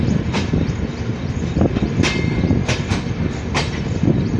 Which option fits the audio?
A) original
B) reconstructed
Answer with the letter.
A